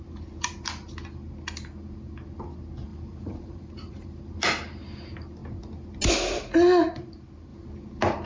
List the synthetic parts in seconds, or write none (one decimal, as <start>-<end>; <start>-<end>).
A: 2.9-4.2